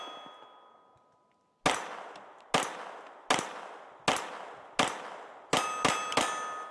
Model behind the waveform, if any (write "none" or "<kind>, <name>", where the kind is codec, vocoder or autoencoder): none